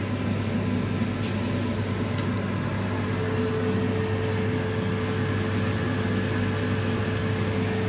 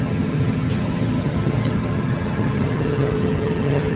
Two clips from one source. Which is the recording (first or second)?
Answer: first